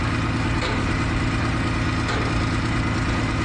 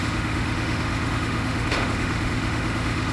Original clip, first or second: first